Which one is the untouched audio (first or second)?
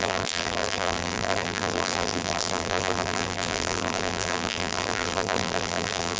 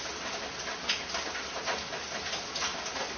second